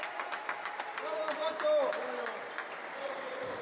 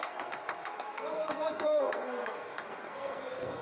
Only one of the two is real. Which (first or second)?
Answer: first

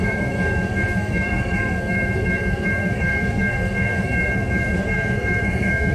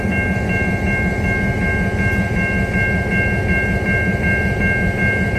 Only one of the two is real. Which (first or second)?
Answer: second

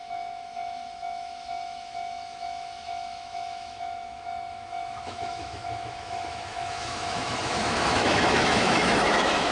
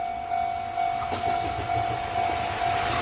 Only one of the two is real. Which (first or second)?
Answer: second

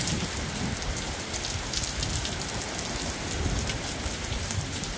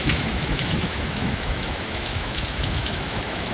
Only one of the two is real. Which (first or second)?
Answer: first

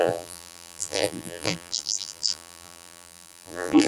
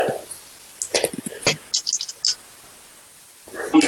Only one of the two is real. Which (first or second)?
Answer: second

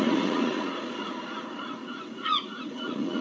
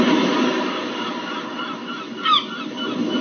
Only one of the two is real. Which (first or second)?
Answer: second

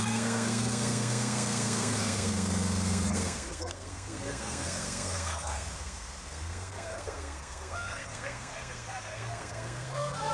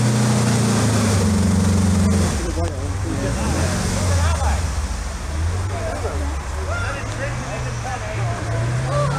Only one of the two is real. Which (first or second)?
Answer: second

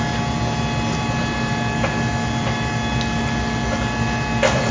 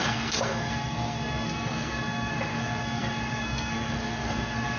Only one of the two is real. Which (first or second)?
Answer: first